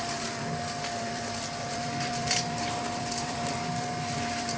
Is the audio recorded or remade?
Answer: remade